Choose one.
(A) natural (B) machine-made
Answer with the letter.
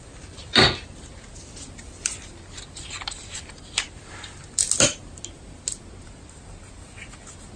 A